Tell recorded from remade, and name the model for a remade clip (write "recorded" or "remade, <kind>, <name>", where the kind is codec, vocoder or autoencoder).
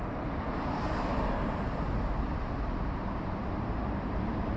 remade, vocoder, BigVGAN v2